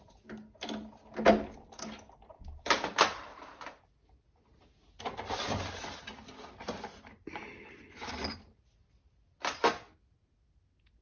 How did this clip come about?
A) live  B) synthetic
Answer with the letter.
A